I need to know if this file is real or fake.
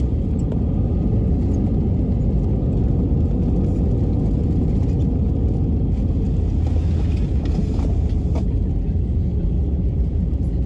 real